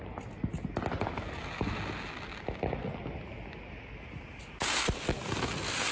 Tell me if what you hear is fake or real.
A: real